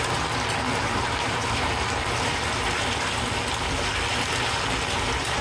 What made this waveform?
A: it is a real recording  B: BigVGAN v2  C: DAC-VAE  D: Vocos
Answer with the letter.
A